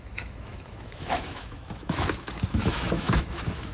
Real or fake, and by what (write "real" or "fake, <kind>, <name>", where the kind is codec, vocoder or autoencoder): fake, autoencoder, DAC-VAE